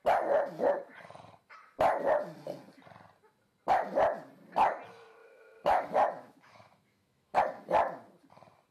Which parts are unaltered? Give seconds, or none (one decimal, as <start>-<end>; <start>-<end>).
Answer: 0.0-5.2; 7.4-8.7